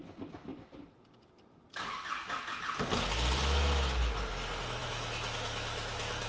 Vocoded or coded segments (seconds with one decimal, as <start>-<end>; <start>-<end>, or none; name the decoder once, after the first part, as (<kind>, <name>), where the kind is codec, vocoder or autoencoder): 4.8-6.3 (autoencoder, DAC-VAE)